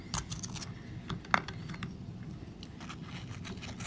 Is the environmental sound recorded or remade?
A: recorded